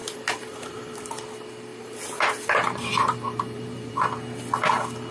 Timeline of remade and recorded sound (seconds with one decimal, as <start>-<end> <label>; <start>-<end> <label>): 0.0-1.1 remade; 1.1-1.7 recorded; 1.7-3.9 remade; 3.9-5.1 recorded